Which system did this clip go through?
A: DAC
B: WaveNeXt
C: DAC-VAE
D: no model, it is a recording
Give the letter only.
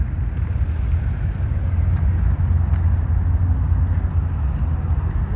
D